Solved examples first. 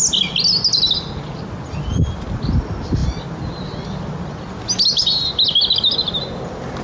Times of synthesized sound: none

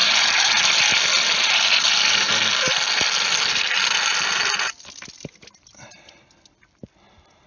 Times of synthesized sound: none

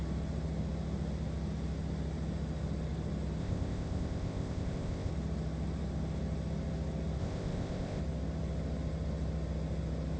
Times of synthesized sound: 3.4-5.1 (codec, ZipCodec); 7.2-8.0

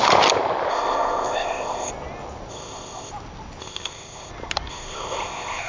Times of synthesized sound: 0.7-1.9 (codec, ZipCodec); 2.5-3.1; 3.6-4.3; 4.7-5.7

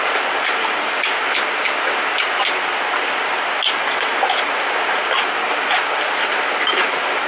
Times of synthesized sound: none